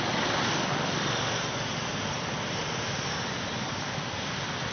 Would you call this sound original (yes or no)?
no